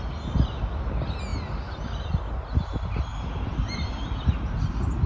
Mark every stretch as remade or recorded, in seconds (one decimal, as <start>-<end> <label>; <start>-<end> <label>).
0.0-3.1 recorded; 3.1-4.6 remade; 4.6-5.1 recorded